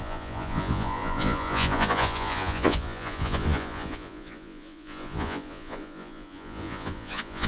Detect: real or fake fake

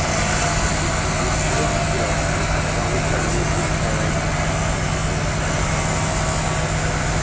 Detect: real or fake real